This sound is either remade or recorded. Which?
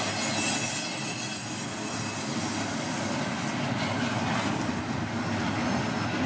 recorded